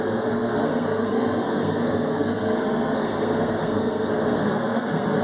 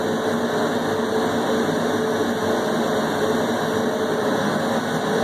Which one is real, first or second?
second